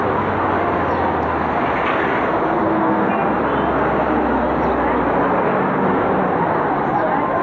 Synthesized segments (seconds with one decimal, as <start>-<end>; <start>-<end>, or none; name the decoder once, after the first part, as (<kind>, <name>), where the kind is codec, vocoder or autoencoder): 2.6-3.1 (codec, SNAC)